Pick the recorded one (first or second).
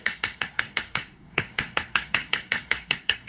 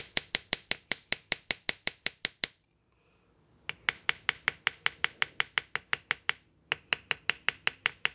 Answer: second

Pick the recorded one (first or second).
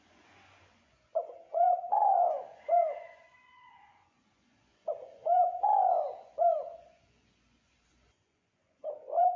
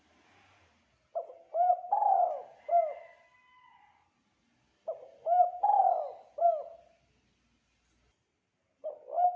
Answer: second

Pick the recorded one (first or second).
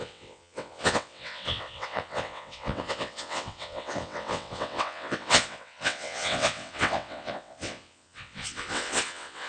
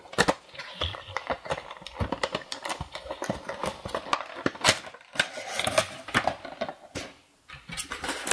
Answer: second